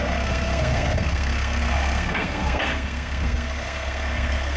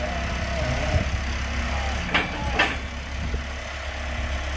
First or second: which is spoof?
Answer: first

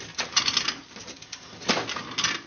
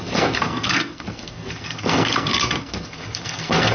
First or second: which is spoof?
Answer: second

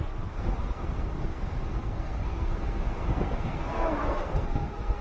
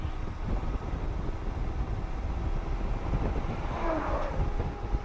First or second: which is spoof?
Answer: first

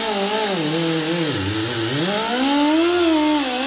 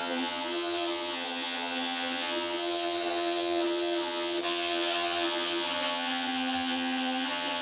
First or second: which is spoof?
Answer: second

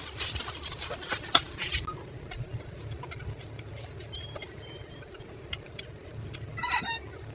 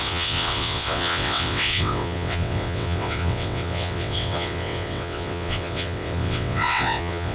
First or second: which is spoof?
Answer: second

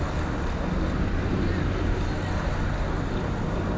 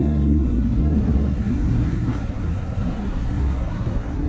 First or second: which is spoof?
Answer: second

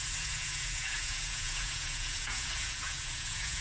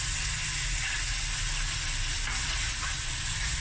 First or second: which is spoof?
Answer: first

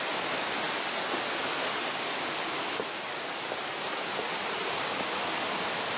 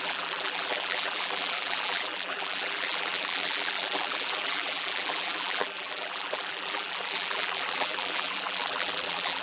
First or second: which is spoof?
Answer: second